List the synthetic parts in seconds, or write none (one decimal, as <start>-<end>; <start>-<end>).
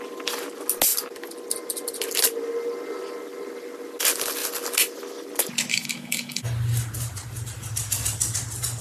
5.7-6.4